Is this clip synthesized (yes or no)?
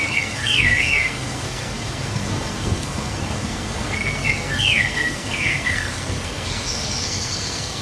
yes